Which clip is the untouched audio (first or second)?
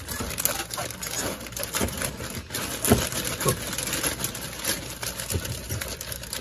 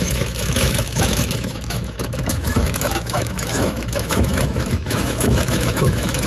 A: first